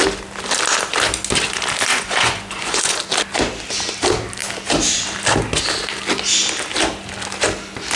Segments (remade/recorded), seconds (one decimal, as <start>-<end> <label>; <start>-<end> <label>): 0.0-1.9 recorded; 1.9-3.0 remade; 3.0-8.0 recorded